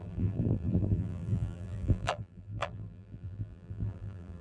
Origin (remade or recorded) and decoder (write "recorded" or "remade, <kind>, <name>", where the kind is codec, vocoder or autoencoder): remade, vocoder, BigVGAN v2